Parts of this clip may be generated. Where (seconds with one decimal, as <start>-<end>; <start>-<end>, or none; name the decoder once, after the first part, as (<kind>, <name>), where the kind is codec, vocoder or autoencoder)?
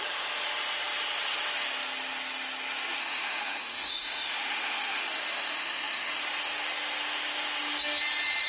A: 3.0-6.2 (autoencoder, DAC-VAE)